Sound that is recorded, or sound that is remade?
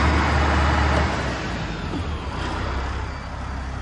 recorded